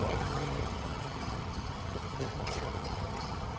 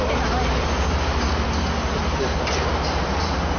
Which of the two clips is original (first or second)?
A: second